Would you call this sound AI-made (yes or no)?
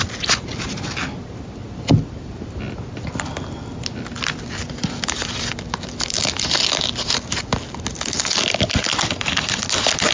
no